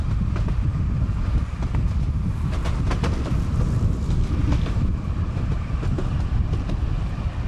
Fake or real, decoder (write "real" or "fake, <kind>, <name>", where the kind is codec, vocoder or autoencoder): real